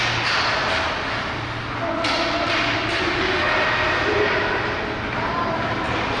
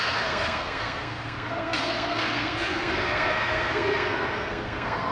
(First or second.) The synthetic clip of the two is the second